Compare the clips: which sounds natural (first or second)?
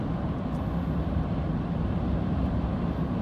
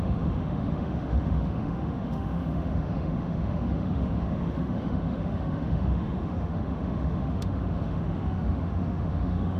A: first